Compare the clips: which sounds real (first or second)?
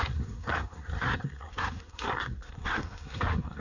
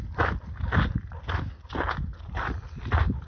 second